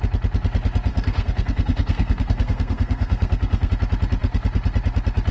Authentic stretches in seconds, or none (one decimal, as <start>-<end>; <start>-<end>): 0.0-0.9; 3.7-5.3